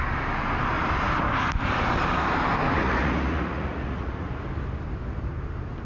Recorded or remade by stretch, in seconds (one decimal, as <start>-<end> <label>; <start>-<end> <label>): 0.0-2.8 recorded; 2.8-4.3 remade; 4.3-5.8 recorded